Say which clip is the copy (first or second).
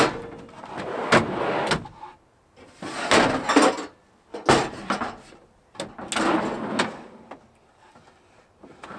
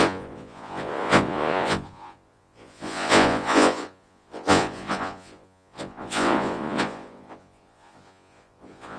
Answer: second